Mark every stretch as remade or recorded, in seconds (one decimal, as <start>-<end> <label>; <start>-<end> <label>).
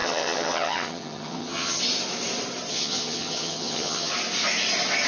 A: 0.0-1.8 remade; 1.8-2.7 recorded; 2.7-4.1 remade; 4.1-5.1 recorded